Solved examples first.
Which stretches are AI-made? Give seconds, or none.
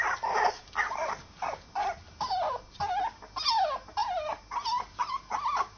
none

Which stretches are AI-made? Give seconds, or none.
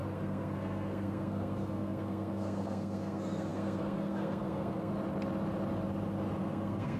0.0-4.9 (codec, SNAC); 6.4-7.0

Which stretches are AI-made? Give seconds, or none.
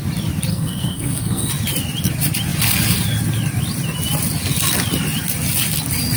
0.5-1.5 (codec, SNAC)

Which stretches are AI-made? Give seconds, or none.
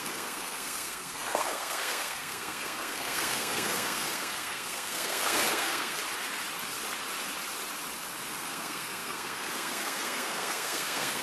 0.0-6.0 (codec, SNAC); 8.3-11.2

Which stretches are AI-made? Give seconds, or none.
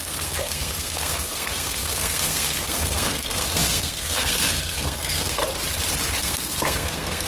0.0-5.4 (codec, SNAC); 6.2-7.3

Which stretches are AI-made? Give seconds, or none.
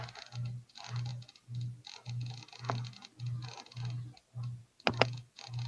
none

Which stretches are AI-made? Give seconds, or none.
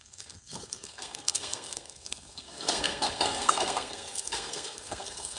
0.0-5.4 (codec, SNAC)